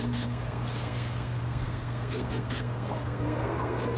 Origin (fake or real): fake